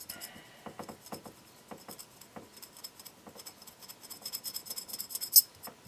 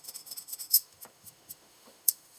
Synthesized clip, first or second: second